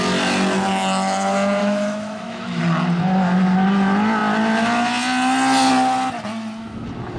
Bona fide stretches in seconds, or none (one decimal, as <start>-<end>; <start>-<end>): 0.0-1.6; 2.6-7.2